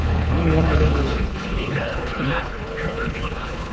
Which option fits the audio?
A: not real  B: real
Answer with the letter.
A